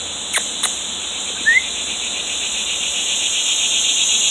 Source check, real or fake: real